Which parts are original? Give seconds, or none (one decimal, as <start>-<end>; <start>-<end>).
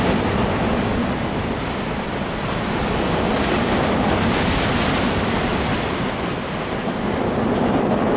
0.0-8.2